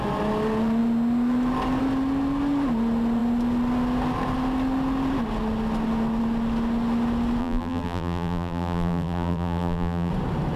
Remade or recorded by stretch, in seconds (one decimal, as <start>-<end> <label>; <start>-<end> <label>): 0.0-7.4 recorded; 7.4-10.1 remade; 10.1-10.6 recorded